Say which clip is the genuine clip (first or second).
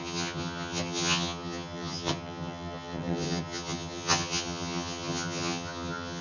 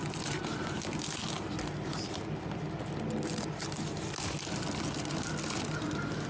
second